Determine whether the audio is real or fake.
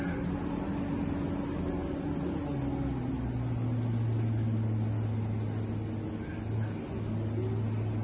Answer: real